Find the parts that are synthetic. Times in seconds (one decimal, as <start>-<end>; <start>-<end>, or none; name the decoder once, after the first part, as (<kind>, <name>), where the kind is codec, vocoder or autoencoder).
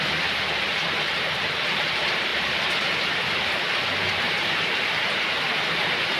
0.0-6.2 (vocoder, BigVGAN v2)